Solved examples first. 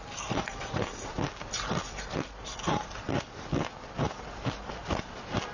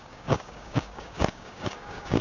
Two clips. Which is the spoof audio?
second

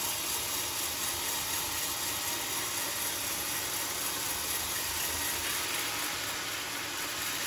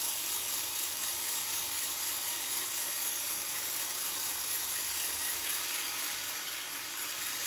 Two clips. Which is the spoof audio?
second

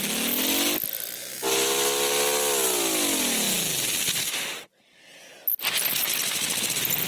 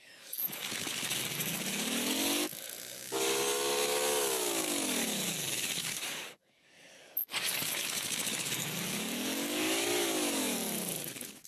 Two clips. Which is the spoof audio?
second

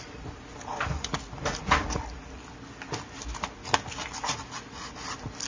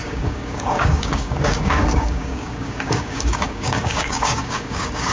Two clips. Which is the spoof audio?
second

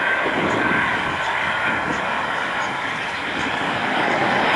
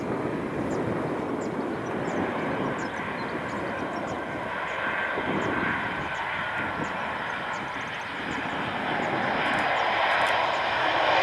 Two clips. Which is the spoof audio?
first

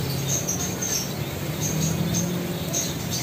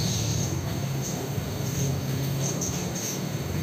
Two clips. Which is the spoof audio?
second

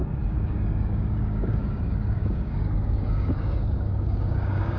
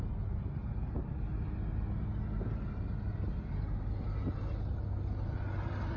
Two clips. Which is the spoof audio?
first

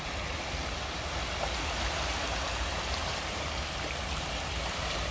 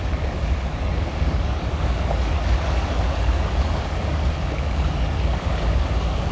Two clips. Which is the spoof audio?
second